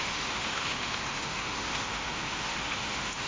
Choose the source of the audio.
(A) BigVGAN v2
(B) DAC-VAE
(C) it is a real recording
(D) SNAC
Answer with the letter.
B